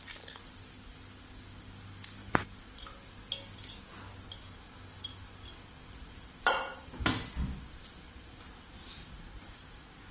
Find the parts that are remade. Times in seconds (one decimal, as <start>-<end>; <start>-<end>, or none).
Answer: none